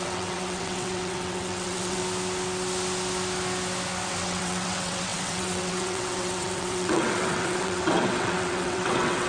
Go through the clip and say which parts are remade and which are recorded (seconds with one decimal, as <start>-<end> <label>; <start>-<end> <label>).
0.0-2.0 remade; 2.0-4.1 recorded; 4.1-9.3 remade